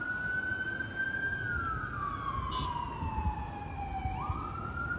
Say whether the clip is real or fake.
real